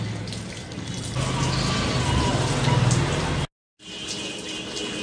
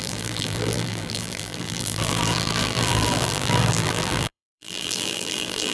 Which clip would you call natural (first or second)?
first